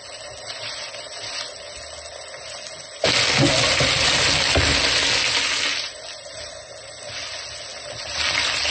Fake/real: real